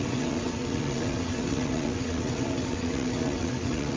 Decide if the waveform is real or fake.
fake